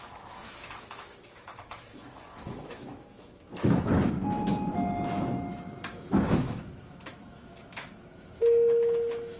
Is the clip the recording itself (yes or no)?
no